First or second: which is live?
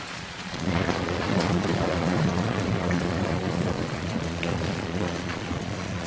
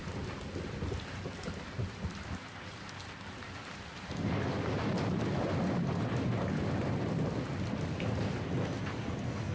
second